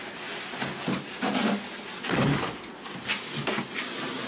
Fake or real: real